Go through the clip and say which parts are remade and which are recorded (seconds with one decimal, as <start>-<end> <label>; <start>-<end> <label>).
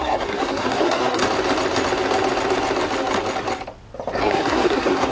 0.0-1.2 remade; 1.2-4.2 recorded; 4.2-5.1 remade